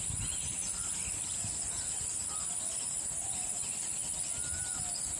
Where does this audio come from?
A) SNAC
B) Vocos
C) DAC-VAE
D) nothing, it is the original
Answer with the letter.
D